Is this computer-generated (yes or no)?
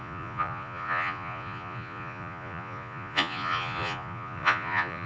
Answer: yes